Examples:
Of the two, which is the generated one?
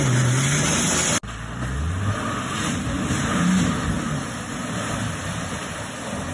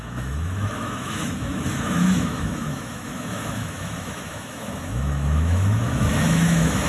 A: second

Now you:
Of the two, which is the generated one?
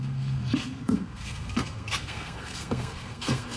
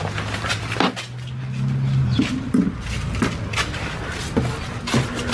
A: first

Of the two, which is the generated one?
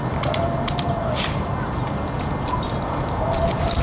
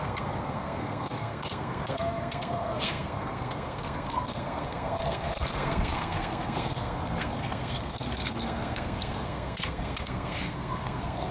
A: second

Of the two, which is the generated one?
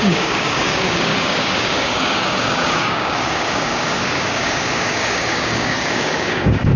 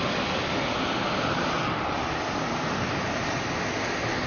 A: first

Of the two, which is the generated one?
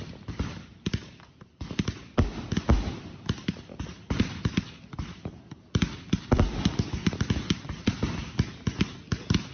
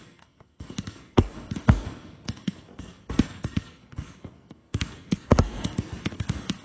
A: second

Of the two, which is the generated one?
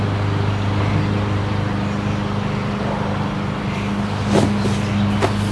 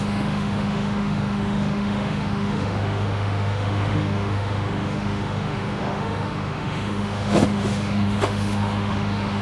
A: second